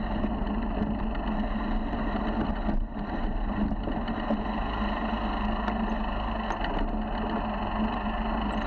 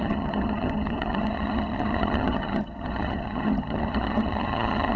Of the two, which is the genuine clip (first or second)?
first